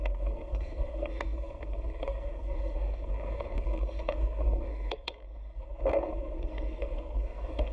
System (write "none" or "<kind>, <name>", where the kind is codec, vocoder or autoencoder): codec, SNAC